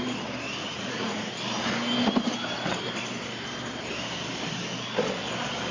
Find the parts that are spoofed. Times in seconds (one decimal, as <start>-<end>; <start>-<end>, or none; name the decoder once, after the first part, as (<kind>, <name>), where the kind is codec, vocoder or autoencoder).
0.6-1.3 (vocoder, Vocos)